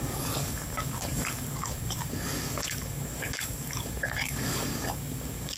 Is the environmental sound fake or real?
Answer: fake